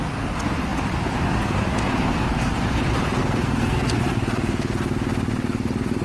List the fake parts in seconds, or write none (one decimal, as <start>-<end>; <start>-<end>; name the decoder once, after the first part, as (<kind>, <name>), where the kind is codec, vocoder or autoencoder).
3.2-4.0 (codec, SNAC)